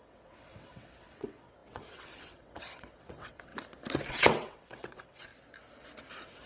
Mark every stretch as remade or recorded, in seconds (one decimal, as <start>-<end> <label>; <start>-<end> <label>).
0.0-3.5 remade; 3.5-4.1 recorded; 4.1-5.3 remade; 5.3-6.1 recorded; 6.1-6.5 remade